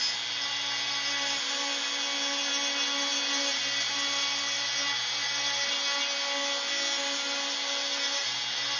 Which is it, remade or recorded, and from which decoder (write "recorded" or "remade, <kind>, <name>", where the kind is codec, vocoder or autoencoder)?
recorded